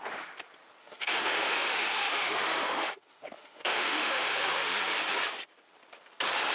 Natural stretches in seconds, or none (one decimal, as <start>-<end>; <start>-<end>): 0.0-0.8; 4.7-6.5